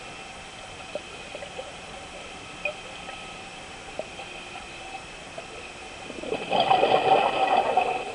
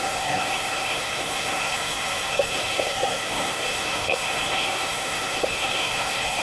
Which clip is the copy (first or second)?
second